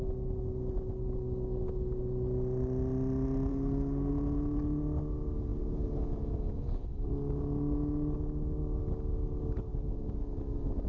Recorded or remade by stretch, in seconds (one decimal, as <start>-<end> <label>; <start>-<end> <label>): 0.0-3.5 recorded; 3.5-4.1 remade; 4.1-10.9 recorded